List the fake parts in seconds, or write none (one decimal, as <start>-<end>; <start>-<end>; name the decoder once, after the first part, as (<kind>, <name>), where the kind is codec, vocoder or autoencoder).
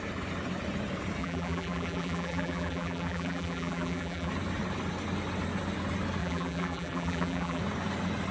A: 1.2-4.3 (vocoder, BigVGAN v2); 6.2-7.6